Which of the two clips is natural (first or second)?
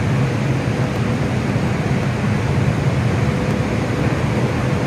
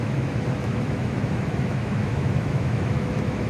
first